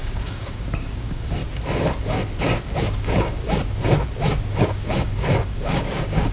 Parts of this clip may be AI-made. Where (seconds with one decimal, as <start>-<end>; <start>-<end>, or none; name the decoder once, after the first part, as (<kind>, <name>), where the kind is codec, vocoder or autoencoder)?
0.0-1.4 (codec, DAC); 2.4-3.4; 4.6-6.3